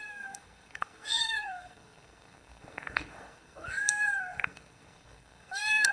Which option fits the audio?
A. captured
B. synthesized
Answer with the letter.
B